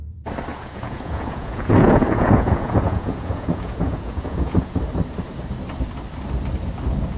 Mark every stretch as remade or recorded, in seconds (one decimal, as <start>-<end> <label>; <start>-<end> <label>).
0.0-0.5 recorded; 0.5-4.8 remade; 4.8-7.2 recorded